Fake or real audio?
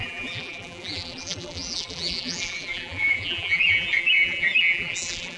fake